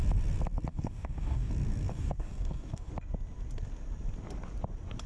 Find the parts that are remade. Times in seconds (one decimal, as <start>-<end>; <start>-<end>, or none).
0.7-1.5; 1.9-2.9